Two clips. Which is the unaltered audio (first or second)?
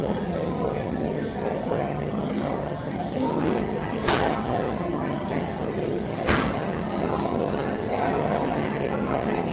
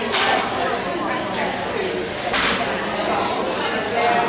second